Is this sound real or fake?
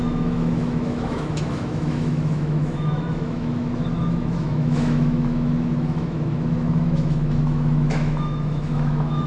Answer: fake